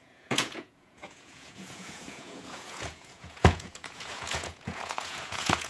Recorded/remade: remade